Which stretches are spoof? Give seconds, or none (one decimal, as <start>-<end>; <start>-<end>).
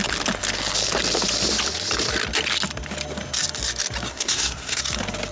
4.1-4.8